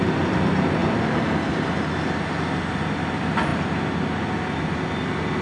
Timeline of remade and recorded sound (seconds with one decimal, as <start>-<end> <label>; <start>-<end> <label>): 0.0-5.4 recorded